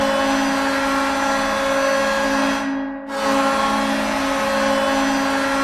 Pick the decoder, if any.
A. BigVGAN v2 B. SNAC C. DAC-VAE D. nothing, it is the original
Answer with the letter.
D